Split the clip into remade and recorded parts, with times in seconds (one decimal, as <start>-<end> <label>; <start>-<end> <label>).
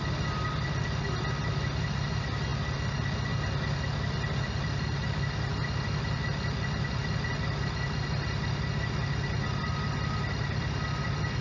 0.0-11.4 recorded